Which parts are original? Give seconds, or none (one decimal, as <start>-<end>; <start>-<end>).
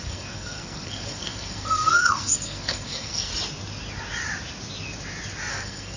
3.3-5.5